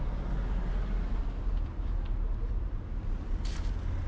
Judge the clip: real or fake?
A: real